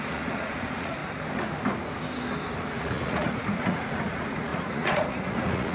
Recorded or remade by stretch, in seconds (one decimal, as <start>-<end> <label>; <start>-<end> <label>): 0.0-1.0 remade; 1.0-2.6 recorded; 2.6-5.7 remade